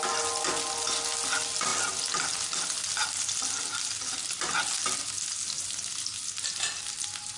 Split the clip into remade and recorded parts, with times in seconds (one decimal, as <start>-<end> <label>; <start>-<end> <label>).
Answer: 0.0-7.4 recorded